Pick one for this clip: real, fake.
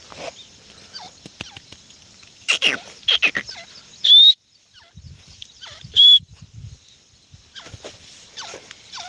real